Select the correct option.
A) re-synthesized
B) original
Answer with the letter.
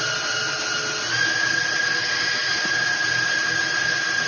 B